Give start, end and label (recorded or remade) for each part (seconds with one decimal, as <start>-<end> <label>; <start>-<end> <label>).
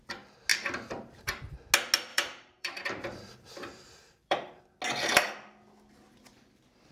0.0-0.5 recorded; 0.5-1.4 remade; 1.4-2.1 recorded; 2.1-4.6 remade; 4.6-6.9 recorded